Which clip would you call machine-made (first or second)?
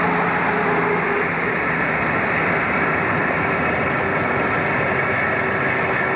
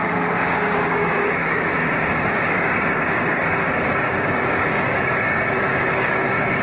second